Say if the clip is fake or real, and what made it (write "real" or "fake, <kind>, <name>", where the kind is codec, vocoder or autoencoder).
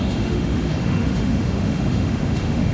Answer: fake, autoencoder, DAC-VAE